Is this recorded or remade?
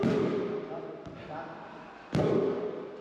recorded